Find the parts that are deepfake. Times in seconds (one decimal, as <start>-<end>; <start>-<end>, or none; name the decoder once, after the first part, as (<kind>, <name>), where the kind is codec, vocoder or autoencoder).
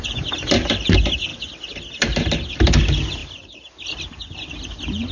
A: none